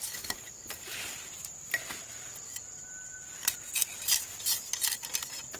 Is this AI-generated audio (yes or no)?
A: no